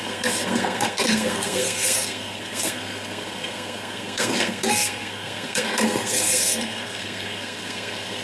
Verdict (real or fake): fake